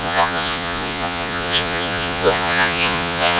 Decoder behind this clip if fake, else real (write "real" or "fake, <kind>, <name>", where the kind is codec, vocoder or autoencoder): fake, vocoder, Vocos